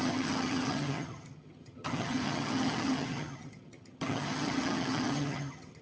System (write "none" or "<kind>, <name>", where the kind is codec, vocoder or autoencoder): vocoder, HiFi-GAN